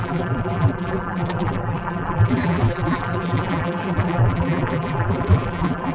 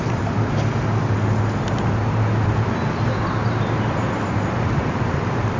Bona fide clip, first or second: second